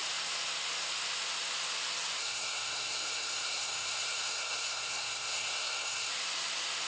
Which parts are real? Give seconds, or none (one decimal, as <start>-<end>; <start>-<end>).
0.0-2.2; 6.1-6.9